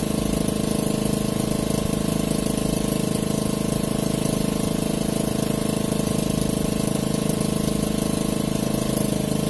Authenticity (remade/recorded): recorded